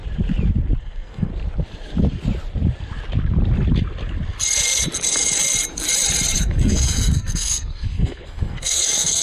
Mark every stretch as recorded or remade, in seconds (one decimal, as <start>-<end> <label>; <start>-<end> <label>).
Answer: 0.0-0.8 recorded; 0.8-1.3 remade; 1.3-6.4 recorded; 6.4-9.2 remade